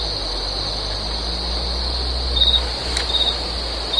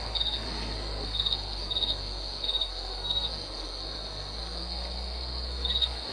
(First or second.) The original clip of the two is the first